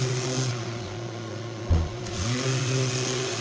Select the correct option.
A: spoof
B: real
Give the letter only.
A